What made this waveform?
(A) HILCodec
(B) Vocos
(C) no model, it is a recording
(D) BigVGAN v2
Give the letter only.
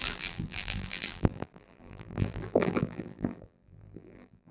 D